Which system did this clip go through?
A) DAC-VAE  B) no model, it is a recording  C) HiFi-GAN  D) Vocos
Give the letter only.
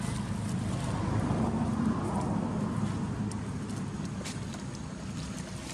B